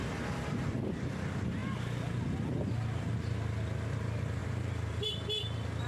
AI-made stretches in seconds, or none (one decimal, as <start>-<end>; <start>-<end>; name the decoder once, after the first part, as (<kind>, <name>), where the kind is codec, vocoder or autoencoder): 4.4-5.1 (vocoder, BigVGAN v2)